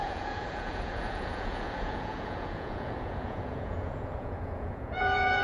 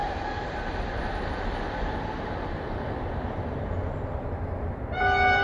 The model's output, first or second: first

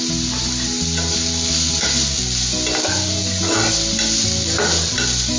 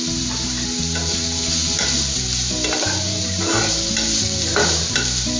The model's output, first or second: second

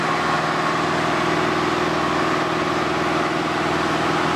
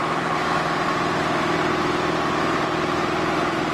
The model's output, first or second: second